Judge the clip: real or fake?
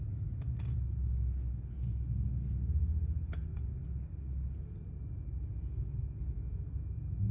real